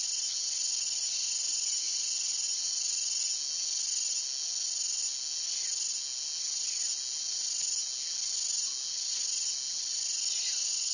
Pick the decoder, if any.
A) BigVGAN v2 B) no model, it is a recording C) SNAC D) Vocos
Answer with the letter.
B